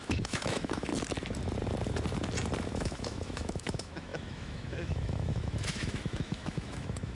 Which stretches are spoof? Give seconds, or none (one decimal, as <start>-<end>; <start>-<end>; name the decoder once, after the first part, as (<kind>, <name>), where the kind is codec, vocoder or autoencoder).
0.0-0.9 (autoencoder, DAC-VAE); 2.7-7.1